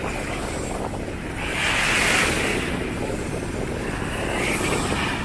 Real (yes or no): yes